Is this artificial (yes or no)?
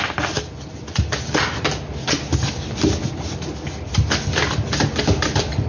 no